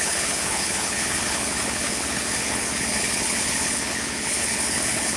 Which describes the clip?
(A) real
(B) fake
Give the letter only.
B